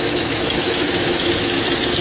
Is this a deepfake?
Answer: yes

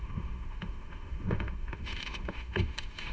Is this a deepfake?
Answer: yes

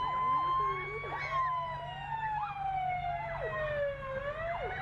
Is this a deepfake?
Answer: no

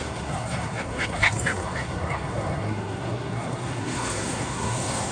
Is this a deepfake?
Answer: yes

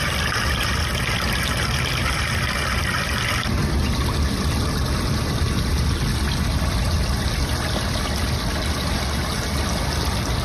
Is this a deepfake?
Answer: no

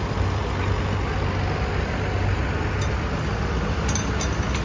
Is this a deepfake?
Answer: no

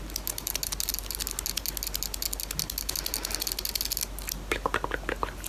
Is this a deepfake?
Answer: no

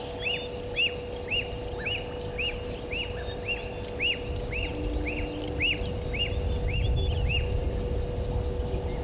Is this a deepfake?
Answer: no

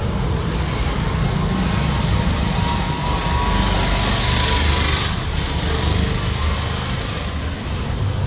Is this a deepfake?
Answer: no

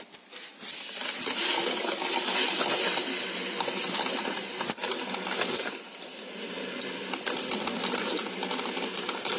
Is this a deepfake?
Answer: no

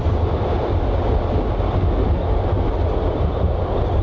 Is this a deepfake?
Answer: no